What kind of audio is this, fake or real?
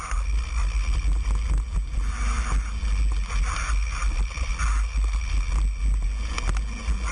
real